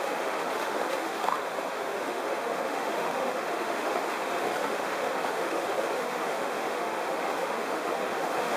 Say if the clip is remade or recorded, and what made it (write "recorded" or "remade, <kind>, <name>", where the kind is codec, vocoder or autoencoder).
remade, autoencoder, DAC-VAE